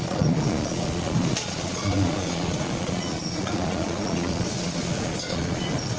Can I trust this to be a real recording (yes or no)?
no